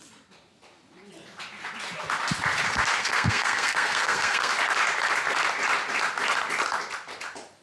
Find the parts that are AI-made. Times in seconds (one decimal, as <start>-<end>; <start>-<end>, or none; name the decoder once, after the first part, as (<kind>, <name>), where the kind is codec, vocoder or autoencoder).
3.0-4.5 (codec, SNAC)